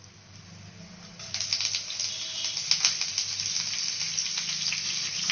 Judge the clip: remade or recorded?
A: recorded